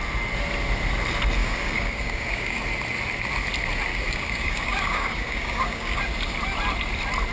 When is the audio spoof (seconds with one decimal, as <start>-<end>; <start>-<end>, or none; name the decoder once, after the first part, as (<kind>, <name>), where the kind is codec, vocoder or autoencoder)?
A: 1.4-2.6 (codec, DAC); 3.9-6.0